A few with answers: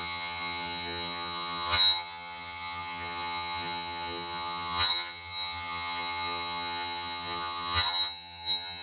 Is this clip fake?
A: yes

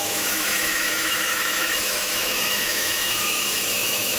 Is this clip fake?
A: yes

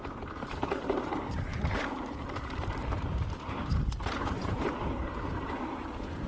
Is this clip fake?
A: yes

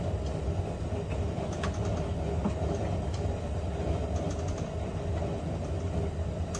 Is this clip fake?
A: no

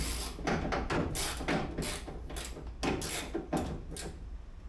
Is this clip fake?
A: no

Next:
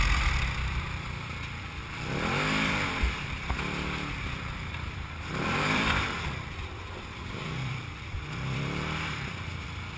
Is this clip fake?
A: yes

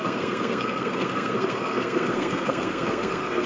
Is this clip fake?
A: yes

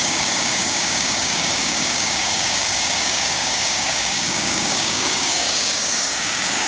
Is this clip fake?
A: yes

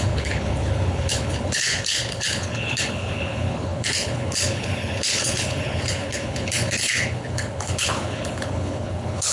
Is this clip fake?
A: yes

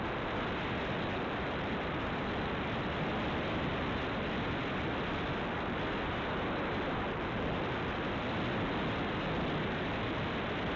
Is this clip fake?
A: no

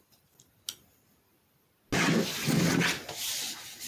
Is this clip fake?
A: no